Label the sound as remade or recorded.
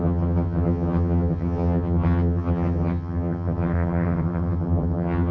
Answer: remade